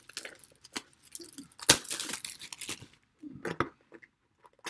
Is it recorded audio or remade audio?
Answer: recorded